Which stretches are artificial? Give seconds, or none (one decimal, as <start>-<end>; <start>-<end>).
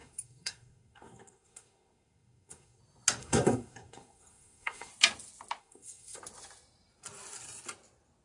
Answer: 0.0-2.8; 3.2-4.9; 5.6-6.2